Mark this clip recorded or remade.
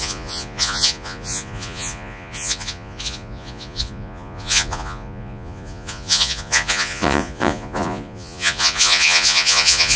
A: remade